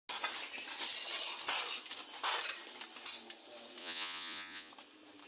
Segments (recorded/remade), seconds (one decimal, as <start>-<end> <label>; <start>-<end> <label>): 0.0-3.8 recorded; 3.8-4.7 remade; 4.7-5.3 recorded